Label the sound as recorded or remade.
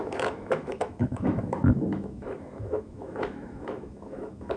remade